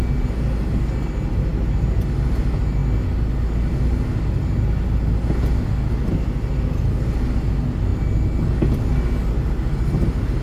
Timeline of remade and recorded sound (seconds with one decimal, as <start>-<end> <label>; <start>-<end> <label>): 0.0-10.4 recorded